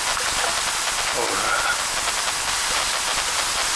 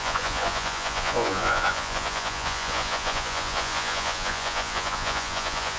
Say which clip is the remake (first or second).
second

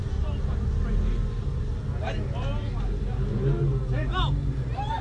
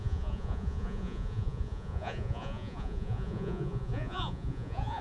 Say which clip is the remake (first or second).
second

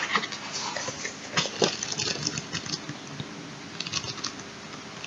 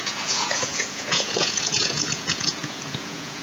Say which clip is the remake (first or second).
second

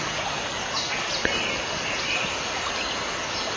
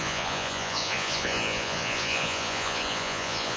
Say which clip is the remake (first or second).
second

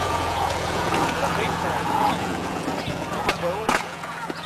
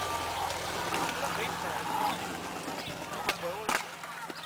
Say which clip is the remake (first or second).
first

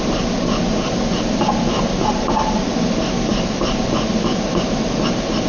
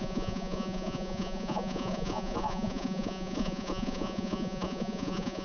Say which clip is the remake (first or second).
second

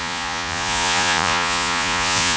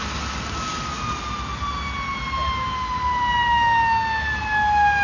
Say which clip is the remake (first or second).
first